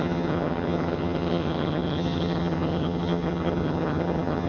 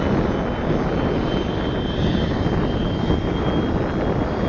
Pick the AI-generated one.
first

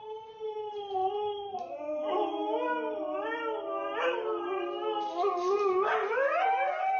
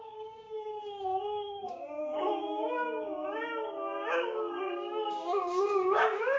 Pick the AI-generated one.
second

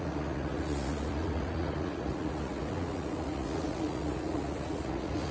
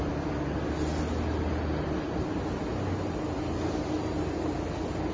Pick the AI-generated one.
first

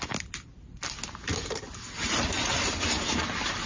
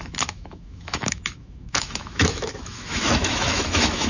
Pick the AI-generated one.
second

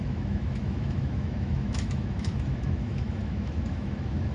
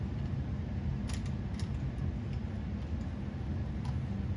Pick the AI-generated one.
first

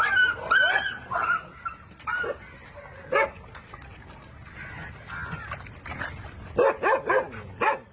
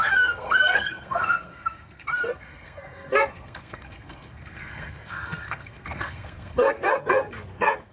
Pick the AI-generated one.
second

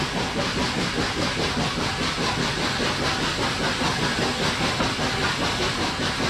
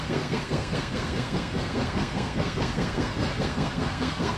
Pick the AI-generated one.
second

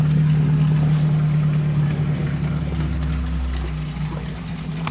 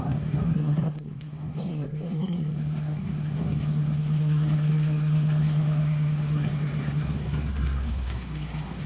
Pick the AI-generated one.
second